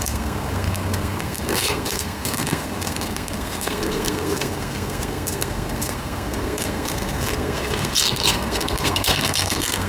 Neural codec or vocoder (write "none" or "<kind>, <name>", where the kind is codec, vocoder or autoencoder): codec, SNAC